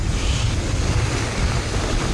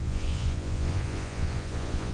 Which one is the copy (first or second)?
second